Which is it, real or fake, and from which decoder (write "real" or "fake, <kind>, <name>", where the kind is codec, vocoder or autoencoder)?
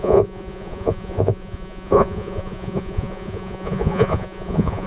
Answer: fake, vocoder, Vocos